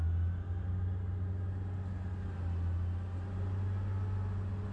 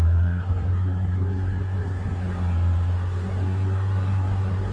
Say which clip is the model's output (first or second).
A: second